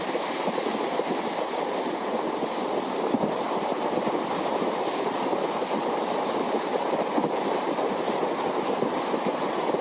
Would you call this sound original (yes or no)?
yes